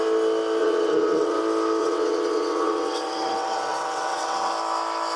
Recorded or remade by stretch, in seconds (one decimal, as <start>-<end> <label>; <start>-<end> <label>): 0.0-0.6 recorded; 0.6-1.4 remade; 1.4-1.8 recorded; 1.8-4.5 remade; 4.5-5.2 recorded